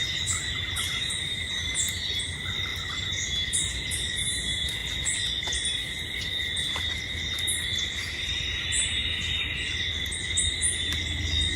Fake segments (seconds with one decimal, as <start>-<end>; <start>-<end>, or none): none